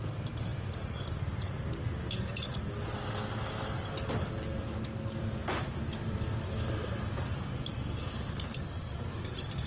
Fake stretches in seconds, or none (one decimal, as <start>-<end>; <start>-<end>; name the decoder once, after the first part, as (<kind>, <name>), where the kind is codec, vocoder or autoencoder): none